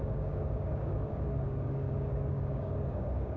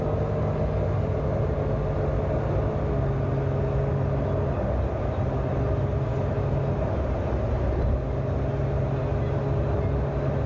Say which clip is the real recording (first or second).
second